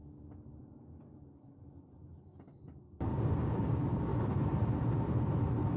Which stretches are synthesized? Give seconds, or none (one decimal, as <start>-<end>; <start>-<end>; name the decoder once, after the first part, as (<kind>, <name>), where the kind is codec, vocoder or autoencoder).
0.6-4.1 (codec, DAC)